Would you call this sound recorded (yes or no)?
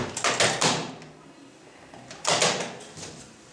yes